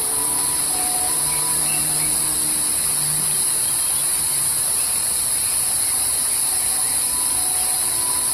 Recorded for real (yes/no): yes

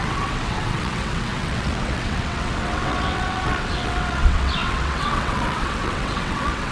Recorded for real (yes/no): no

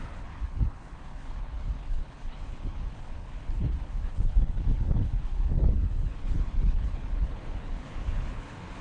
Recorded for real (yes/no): no